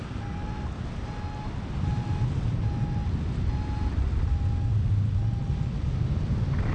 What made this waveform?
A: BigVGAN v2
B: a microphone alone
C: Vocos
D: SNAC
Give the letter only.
B